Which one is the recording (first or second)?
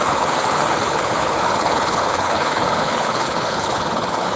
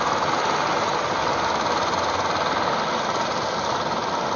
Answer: second